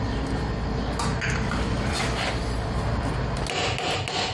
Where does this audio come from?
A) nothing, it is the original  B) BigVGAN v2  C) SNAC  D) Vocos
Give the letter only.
A